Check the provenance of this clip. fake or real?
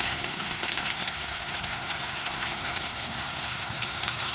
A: fake